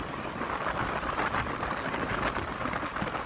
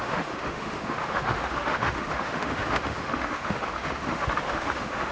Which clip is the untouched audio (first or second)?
first